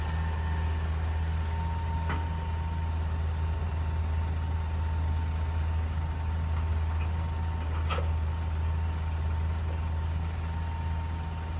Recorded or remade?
recorded